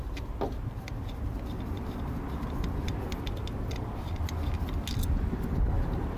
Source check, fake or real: real